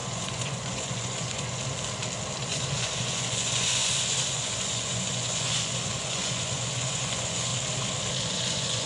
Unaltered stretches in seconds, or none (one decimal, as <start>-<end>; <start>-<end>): 1.6-2.4; 7.5-8.2